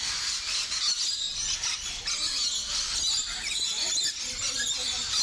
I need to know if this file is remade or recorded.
recorded